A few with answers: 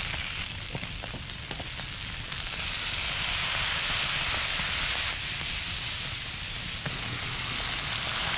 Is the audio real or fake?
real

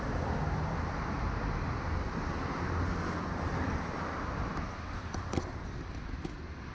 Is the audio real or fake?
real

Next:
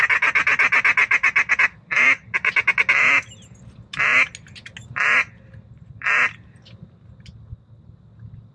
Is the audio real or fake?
real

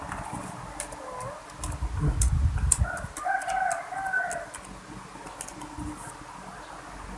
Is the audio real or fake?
real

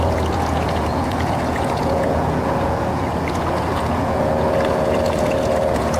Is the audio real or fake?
fake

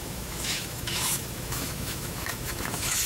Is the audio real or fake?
fake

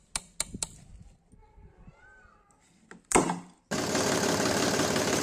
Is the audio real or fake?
real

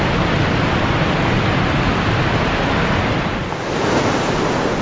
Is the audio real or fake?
real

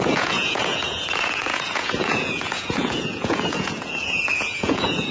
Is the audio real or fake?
fake